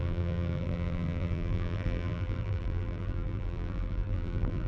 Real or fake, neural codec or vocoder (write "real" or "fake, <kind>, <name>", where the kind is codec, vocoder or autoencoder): fake, vocoder, BigVGAN v2